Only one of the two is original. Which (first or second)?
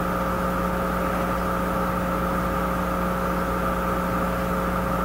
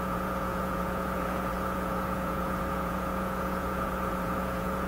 first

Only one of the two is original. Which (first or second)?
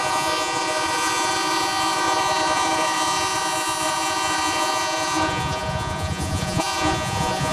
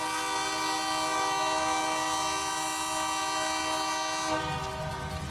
second